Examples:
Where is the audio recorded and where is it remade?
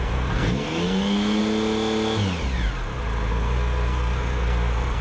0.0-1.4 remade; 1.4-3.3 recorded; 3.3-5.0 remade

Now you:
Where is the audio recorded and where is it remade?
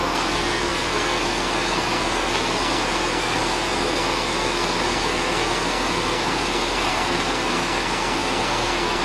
0.0-9.0 remade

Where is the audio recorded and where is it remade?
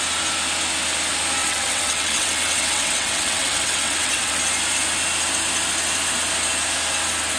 0.0-1.4 recorded; 1.4-4.4 remade; 4.4-7.4 recorded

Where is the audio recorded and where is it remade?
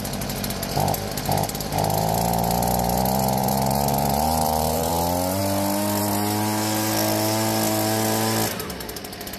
0.0-3.4 recorded; 3.4-4.9 remade; 4.9-9.4 recorded